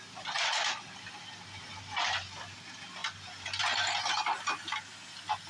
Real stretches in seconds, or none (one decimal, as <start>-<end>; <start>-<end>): 0.0-5.5